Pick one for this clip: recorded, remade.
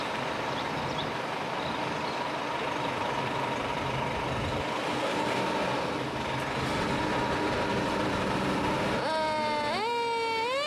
recorded